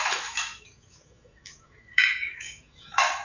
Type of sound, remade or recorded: remade